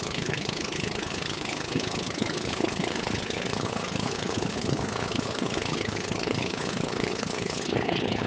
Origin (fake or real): fake